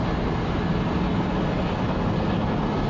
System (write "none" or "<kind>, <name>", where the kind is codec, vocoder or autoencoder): none